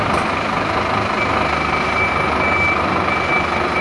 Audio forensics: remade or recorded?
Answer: recorded